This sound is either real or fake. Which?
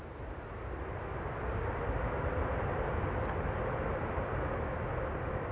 real